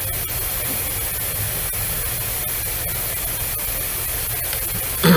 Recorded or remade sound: recorded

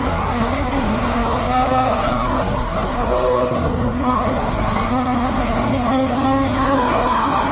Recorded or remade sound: remade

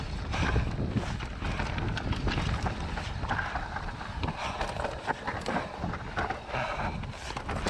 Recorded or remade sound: recorded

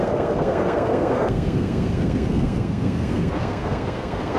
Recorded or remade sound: remade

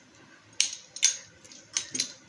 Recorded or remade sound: recorded